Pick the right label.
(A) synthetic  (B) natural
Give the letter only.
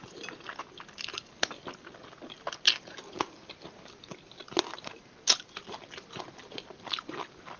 B